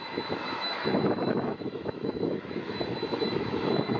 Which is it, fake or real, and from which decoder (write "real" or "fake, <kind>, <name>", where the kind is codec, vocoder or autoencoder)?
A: fake, autoencoder, DAC-VAE